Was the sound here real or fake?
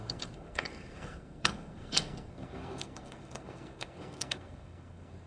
fake